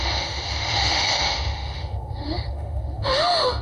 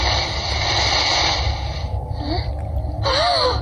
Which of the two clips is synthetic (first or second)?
first